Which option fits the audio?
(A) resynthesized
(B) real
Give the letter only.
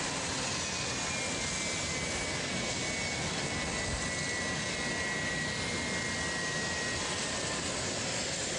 B